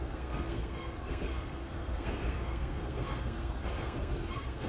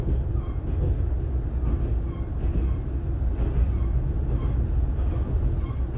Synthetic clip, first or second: first